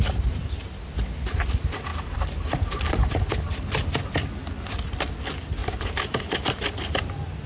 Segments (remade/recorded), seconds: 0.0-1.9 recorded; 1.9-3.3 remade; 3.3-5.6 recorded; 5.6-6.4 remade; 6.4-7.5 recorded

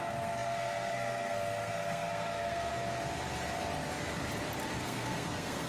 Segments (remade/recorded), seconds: 0.0-2.7 remade; 2.7-4.8 recorded; 4.8-5.7 remade

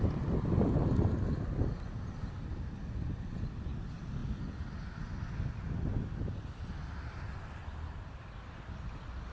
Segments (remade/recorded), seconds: 0.0-9.3 recorded

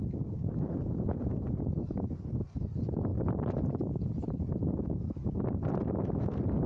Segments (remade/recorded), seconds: 0.0-6.7 recorded